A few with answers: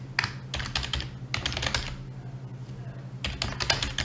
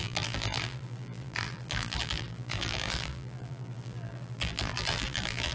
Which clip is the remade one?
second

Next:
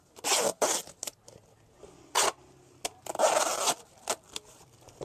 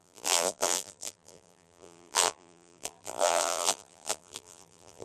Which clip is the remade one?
second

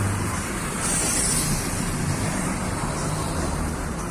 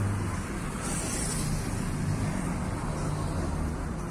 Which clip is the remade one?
first